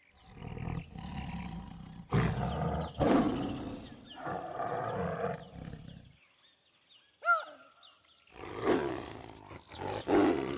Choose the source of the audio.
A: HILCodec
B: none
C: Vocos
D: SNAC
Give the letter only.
B